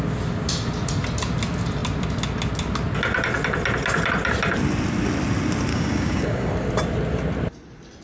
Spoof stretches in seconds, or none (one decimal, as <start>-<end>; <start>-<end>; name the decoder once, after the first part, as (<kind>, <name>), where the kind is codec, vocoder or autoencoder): 5.7-6.5 (codec, DAC)